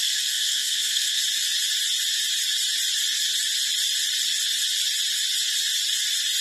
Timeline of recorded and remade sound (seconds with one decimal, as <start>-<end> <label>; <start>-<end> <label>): 0.0-1.2 remade; 1.2-6.4 recorded